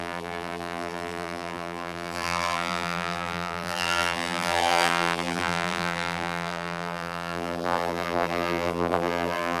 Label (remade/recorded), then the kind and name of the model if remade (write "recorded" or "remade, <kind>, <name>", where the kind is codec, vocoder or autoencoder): remade, vocoder, BigVGAN v2